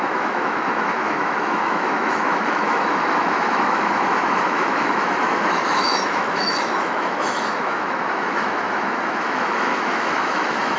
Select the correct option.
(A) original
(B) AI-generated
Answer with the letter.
B